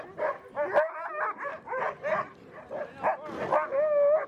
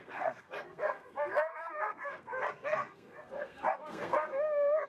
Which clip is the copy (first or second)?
second